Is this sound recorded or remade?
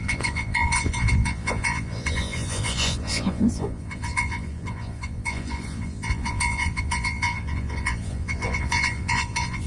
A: remade